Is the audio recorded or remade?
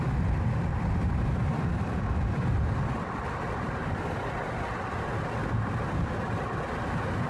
recorded